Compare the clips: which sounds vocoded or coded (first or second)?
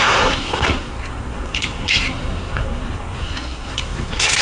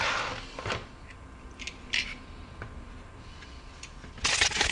first